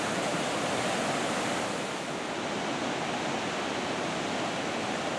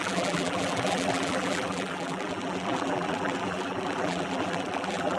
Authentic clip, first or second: first